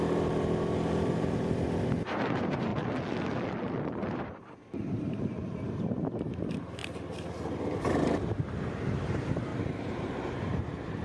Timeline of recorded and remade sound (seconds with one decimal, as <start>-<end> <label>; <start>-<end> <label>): 0.0-2.7 remade; 2.7-3.8 recorded; 3.8-6.8 remade; 6.8-8.9 recorded; 8.9-11.0 remade